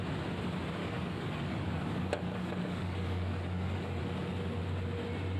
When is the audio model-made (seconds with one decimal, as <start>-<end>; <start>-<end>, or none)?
0.8-4.0